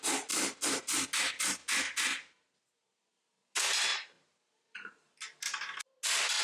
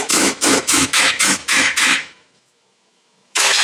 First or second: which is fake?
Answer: second